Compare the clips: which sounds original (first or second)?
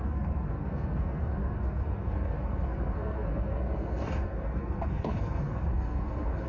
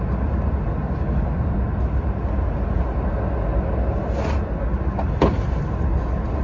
second